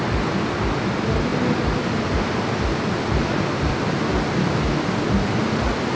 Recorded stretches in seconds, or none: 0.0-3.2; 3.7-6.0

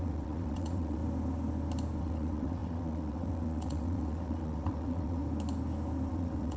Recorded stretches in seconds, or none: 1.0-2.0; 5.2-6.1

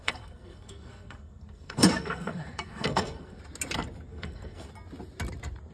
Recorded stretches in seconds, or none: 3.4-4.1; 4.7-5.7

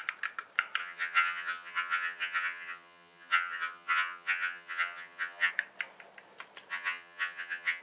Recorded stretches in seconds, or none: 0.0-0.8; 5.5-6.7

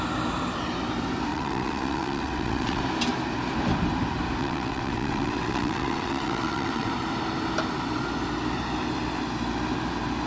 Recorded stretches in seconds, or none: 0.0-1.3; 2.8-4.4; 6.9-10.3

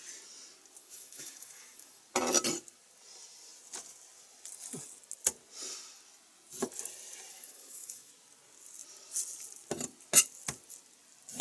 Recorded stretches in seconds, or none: 0.0-0.8; 2.0-7.3; 8.1-11.4

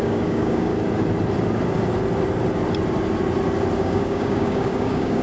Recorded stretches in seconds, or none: 0.7-3.8

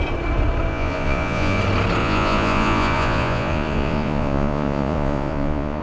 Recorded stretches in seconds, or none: 0.0-0.7; 1.6-2.0